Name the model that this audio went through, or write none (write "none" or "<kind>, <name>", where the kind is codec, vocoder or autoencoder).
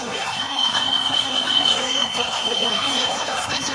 codec, SNAC